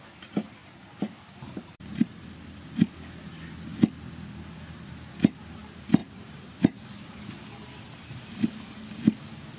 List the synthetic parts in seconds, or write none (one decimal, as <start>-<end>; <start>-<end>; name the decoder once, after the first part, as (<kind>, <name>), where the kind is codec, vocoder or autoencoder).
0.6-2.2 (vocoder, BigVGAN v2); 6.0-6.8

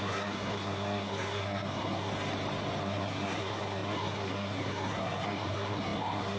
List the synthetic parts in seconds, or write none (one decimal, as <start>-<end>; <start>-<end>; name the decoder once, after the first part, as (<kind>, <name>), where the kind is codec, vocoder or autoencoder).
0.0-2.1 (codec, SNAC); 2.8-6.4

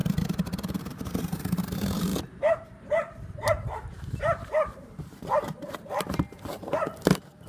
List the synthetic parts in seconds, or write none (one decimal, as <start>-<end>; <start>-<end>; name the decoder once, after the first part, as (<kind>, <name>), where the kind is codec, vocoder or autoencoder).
0.0-7.5 (vocoder, BigVGAN v2)